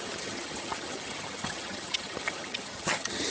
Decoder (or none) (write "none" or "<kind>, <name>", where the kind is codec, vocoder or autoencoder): vocoder, HiFi-GAN